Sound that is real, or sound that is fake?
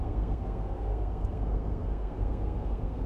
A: fake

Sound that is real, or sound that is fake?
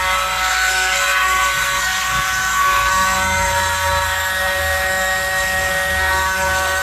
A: fake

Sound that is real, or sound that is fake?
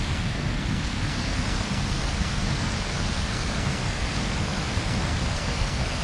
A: fake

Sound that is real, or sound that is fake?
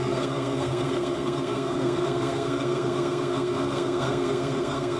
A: fake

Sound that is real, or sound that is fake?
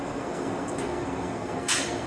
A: fake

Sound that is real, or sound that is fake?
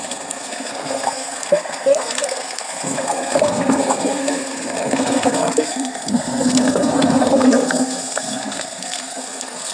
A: fake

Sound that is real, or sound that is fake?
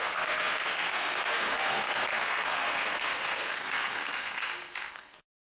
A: fake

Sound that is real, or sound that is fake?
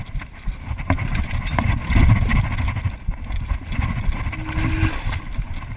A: real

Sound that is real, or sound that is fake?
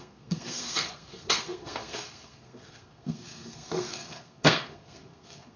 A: fake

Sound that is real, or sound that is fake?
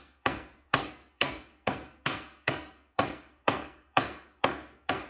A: fake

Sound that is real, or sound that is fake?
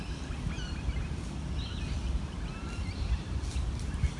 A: real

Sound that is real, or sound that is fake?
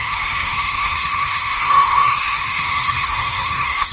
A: fake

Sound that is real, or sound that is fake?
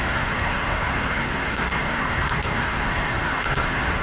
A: fake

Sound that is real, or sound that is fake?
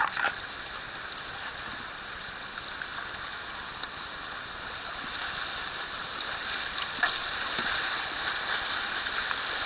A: real